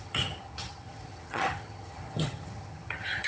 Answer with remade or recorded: remade